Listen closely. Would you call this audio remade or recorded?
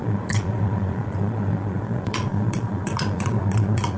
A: remade